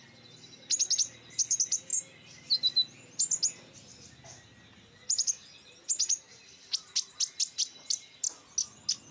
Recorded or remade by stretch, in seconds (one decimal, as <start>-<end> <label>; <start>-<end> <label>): 0.0-9.1 recorded